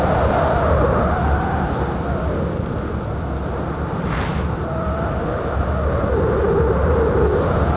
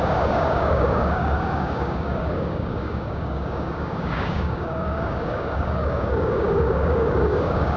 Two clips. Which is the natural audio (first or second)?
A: first